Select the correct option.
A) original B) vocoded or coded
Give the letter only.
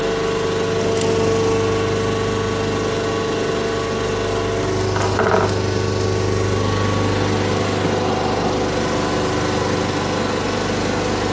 A